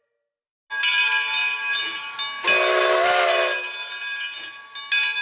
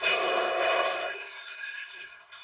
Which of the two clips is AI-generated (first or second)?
second